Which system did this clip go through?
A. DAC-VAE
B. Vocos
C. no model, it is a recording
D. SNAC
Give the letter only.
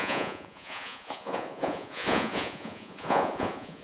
B